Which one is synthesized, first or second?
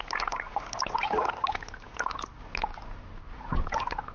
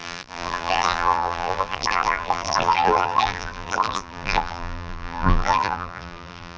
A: second